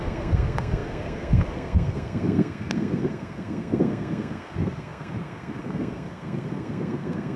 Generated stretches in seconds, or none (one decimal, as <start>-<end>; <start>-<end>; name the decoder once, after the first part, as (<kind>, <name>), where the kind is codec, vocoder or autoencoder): 0.0-7.4 (codec, SNAC)